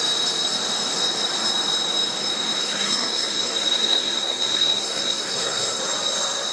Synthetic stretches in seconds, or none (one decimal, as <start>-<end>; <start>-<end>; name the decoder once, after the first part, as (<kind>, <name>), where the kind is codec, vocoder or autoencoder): 2.6-5.8 (codec, SNAC)